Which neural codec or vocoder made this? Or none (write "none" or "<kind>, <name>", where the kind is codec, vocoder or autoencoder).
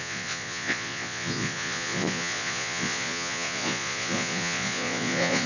vocoder, Vocos